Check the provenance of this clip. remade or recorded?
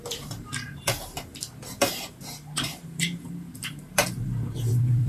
remade